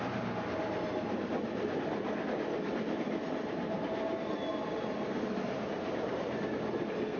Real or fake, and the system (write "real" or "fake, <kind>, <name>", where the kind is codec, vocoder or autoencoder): real